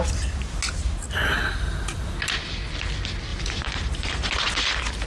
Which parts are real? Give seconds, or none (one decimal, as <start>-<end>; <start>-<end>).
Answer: 0.0-3.3; 4.3-5.1